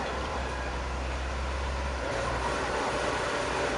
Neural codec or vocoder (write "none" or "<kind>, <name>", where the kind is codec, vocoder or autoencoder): vocoder, BigVGAN v2